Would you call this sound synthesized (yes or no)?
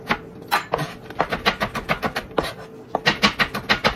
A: no